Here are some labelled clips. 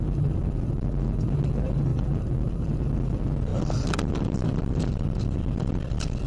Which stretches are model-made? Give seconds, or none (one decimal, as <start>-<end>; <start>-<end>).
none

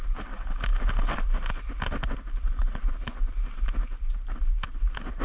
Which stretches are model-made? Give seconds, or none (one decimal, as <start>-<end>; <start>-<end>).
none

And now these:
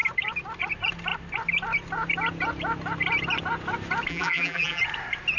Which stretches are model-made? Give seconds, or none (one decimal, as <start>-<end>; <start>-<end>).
4.1-4.8

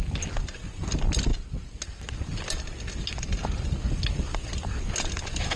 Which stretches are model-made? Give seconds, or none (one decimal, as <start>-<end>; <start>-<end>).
none

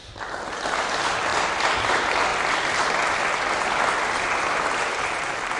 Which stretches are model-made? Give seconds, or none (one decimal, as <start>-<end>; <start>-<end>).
0.0-2.3; 5.0-5.6

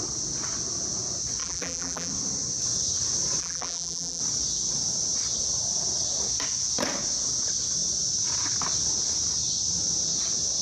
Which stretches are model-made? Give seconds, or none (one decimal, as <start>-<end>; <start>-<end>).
1.4-2.1; 3.4-4.2

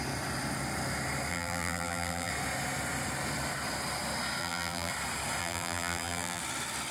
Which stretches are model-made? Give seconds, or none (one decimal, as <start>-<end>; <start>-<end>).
1.3-2.3; 4.4-4.9; 5.4-6.4